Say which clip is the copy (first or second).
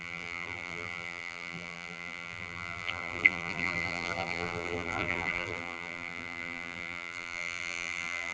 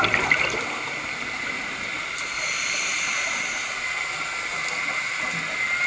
first